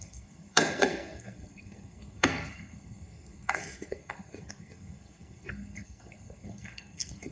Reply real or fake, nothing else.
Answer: fake